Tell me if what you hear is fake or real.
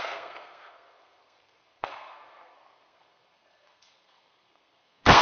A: fake